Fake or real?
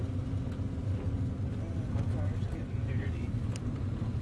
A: real